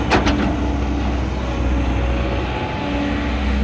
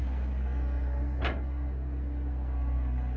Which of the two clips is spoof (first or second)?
second